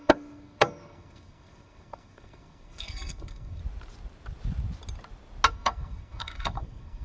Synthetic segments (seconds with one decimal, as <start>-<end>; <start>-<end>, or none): 0.0-3.6; 5.5-7.0